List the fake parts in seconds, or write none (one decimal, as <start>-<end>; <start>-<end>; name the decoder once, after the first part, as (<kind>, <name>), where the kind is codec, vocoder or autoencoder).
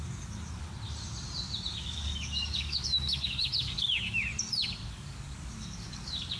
0.0-0.7 (codec, DAC); 1.7-4.3; 4.9-6.4